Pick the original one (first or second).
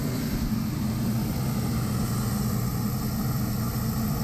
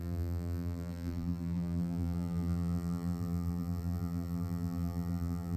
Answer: first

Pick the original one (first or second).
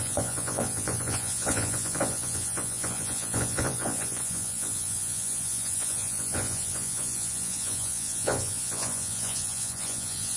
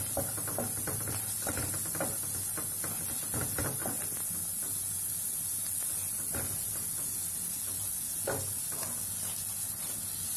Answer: second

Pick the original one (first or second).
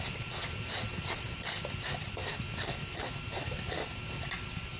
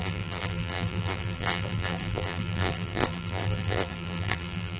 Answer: first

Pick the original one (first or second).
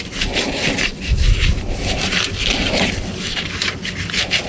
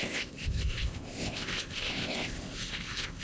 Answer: first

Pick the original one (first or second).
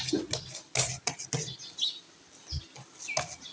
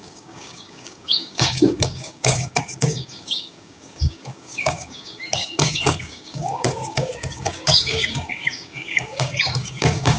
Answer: first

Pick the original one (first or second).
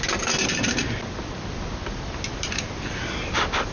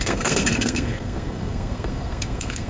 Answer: first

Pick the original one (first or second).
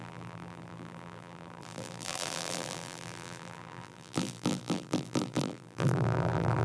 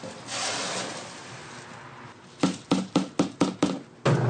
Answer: second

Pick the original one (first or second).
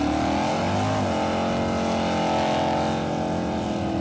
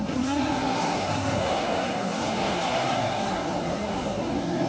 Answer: first